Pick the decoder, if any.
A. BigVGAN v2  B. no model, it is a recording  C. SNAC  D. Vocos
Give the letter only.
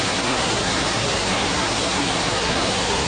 C